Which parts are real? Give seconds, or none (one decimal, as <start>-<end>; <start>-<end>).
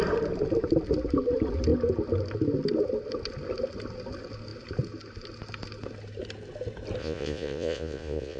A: 0.0-7.0